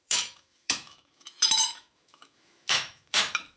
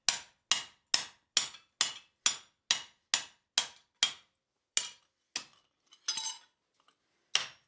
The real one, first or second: second